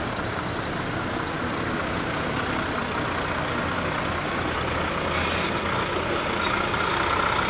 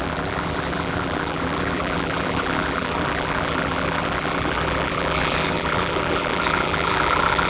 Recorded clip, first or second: first